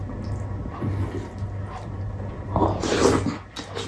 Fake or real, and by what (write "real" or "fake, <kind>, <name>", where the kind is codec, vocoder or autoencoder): real